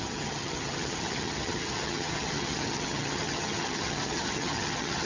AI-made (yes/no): yes